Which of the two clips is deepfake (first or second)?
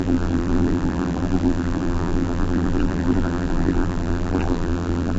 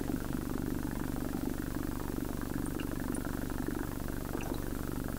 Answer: first